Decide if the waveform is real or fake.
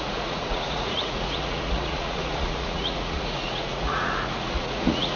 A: fake